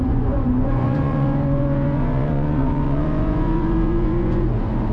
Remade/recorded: remade